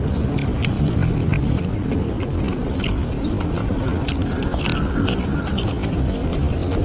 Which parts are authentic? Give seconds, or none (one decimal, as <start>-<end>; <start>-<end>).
0.0-6.8